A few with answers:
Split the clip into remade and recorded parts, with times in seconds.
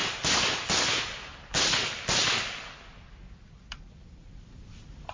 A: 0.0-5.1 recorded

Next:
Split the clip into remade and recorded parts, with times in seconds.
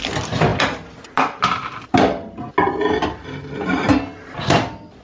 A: 0.0-5.0 recorded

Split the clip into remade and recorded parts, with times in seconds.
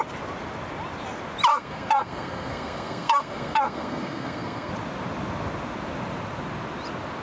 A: 0.0-1.5 recorded; 1.5-4.7 remade; 4.7-7.2 recorded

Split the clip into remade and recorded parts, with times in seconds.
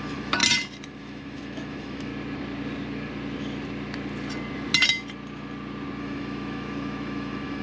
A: 0.0-0.4 remade; 0.4-1.0 recorded; 1.0-2.1 remade; 2.1-6.0 recorded; 6.0-7.6 remade